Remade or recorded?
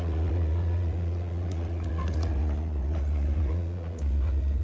remade